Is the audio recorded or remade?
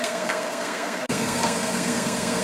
remade